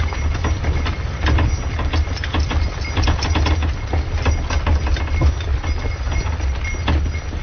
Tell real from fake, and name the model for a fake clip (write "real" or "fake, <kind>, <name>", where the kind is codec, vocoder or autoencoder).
real